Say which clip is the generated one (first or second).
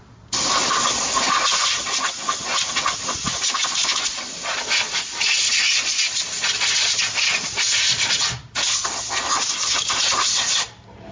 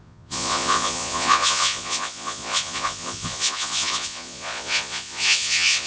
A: second